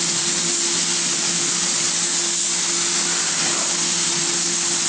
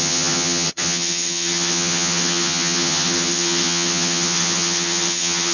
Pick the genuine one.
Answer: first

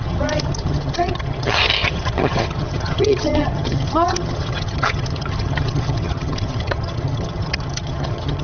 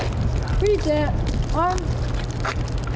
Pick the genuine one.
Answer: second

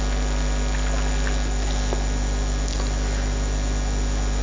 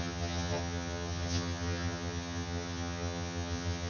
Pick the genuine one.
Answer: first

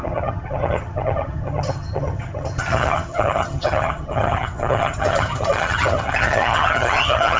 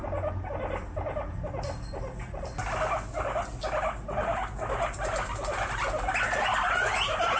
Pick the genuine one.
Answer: second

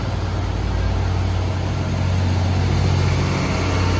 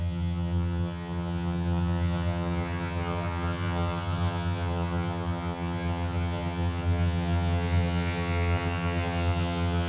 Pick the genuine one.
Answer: first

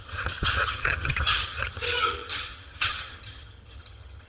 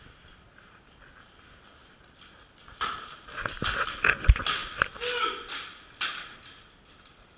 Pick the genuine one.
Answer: second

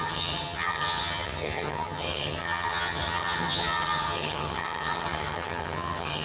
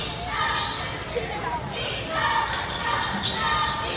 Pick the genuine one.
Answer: second